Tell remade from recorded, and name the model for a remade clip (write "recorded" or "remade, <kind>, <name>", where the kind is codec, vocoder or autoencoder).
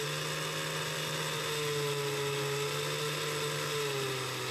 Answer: recorded